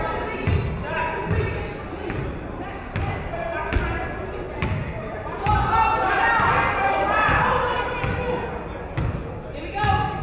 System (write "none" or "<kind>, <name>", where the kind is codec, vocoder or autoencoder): none